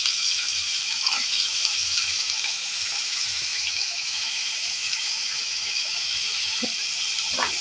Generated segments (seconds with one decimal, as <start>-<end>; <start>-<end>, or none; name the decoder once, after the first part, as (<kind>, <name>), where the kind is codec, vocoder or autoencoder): 0.0-6.6 (autoencoder, DAC-VAE)